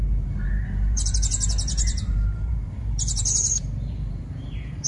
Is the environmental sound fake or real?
fake